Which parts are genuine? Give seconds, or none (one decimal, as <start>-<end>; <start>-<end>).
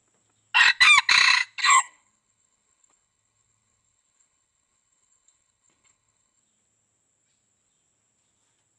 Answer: 0.0-1.6; 6.4-8.8